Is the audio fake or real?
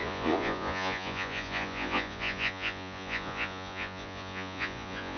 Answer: fake